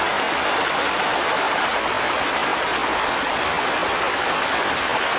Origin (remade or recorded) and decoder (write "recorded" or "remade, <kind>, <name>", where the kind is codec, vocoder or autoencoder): recorded